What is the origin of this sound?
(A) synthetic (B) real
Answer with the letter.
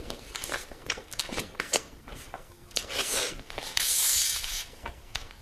A